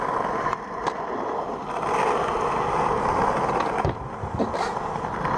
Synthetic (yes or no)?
no